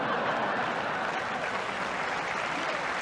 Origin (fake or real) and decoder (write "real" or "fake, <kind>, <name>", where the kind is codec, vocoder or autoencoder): real